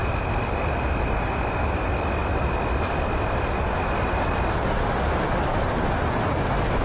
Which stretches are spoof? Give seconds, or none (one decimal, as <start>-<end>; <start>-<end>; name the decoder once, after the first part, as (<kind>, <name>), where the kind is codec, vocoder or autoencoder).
none